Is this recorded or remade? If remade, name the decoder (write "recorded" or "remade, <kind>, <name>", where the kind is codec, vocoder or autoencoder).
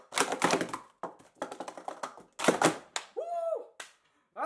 recorded